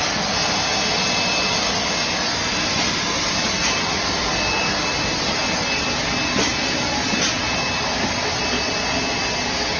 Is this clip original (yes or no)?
yes